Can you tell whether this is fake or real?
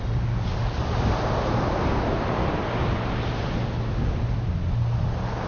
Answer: real